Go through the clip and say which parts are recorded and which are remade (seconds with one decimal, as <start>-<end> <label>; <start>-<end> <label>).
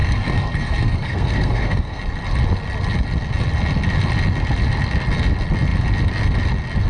0.0-2.0 remade; 2.0-6.9 recorded